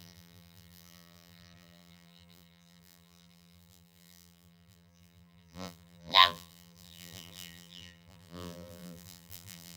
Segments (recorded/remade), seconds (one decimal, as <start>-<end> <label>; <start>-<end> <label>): 0.0-9.8 remade